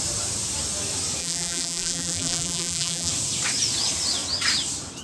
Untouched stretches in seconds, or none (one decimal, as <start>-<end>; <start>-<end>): 0.0-1.2; 3.1-5.0